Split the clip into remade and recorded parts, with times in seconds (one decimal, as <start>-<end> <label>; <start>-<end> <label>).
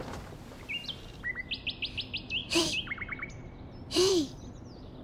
0.0-2.4 recorded; 2.4-4.5 remade; 4.5-5.0 recorded